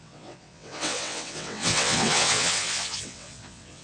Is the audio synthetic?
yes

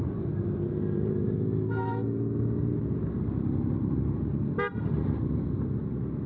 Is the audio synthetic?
no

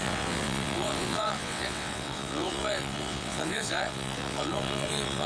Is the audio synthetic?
yes